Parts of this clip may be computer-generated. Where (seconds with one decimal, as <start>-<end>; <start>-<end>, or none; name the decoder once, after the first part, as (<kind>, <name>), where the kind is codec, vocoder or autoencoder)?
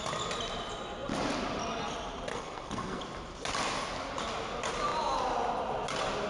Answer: 2.3-3.0 (codec, SNAC)